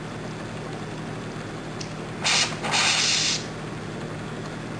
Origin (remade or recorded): recorded